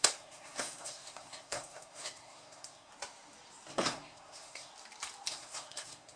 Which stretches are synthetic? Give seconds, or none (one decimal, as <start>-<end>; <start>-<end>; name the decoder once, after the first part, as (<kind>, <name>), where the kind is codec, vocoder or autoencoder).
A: 0.0-2.9 (codec, SNAC); 3.7-4.7; 5.3-6.2